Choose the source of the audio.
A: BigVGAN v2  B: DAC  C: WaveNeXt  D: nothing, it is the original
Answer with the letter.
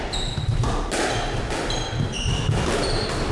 D